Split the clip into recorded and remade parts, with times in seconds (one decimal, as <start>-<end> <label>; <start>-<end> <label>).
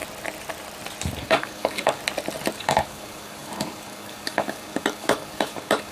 0.0-1.2 recorded; 1.2-2.0 remade; 2.0-2.5 recorded; 2.5-5.9 remade